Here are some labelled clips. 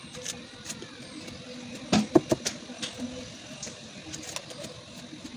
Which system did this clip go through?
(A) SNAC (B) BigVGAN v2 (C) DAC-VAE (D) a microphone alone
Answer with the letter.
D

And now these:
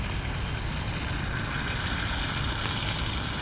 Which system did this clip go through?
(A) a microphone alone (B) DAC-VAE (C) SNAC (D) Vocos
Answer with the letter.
A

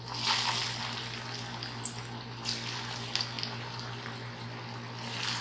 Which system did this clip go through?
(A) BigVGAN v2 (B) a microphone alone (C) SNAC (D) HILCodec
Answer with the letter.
B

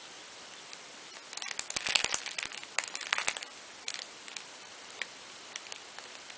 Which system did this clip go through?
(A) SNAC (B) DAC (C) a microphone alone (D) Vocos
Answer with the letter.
C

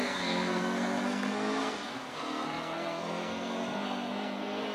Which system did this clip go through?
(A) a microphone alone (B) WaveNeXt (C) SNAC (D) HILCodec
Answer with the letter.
C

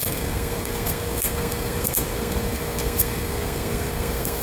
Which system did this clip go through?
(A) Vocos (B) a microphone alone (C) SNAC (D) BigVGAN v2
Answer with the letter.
C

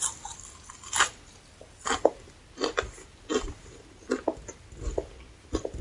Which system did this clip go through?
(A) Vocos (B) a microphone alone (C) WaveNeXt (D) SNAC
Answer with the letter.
B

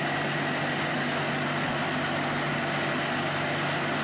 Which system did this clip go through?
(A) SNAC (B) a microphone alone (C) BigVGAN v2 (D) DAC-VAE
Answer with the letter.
B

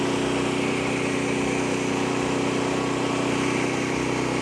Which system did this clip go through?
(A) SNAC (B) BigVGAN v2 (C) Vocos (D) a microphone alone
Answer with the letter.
D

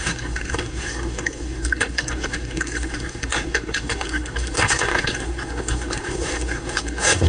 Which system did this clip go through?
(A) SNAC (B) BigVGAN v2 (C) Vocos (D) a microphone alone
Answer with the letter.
A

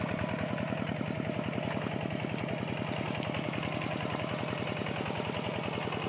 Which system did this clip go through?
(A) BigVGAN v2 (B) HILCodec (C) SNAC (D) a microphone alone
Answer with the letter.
D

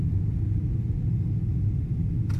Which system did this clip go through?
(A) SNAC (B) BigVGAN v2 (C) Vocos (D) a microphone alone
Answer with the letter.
D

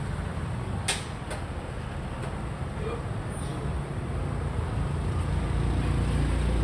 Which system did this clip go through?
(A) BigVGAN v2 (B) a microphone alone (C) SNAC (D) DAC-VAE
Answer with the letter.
B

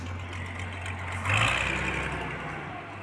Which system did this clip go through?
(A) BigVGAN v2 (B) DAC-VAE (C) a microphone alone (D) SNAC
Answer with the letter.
C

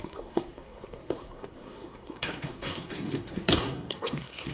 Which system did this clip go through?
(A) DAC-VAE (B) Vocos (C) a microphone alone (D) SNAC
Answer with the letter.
D